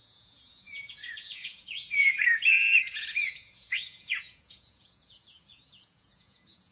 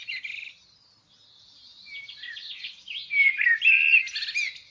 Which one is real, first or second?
second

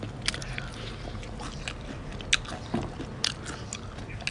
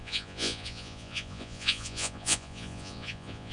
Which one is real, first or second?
first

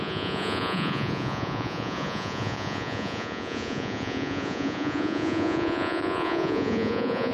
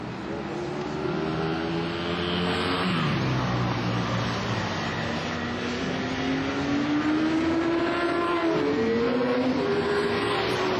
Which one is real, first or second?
second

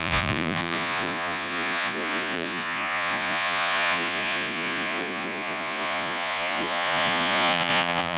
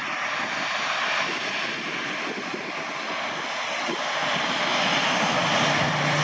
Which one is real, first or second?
second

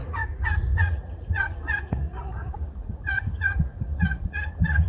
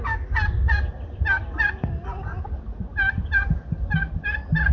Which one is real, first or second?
second